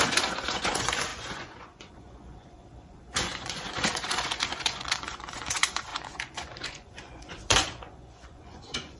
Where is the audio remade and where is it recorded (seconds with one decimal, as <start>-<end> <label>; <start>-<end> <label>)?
0.0-9.0 remade